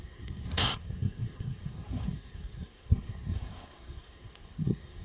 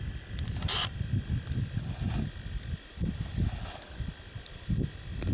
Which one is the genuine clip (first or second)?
second